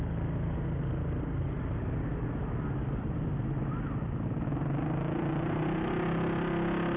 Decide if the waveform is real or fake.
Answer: real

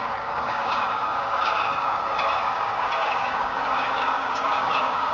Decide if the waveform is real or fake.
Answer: fake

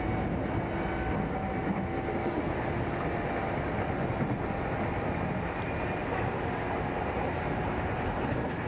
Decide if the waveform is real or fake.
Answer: real